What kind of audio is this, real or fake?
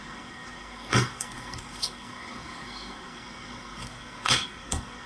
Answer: fake